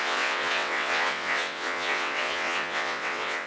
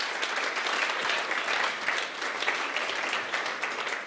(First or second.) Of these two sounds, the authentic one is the second